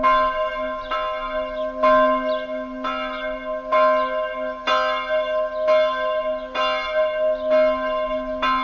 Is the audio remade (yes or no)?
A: no